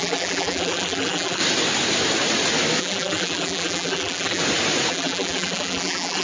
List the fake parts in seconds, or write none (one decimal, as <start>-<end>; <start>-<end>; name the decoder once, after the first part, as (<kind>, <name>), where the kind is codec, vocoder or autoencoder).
0.0-1.4 (vocoder, BigVGAN v2); 2.8-4.4; 4.9-6.2